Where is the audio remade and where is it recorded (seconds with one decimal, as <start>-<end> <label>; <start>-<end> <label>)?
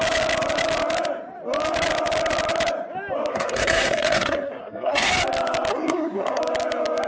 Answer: 0.0-3.3 recorded; 3.3-5.1 remade; 5.1-5.7 recorded; 5.7-6.4 remade; 6.4-7.1 recorded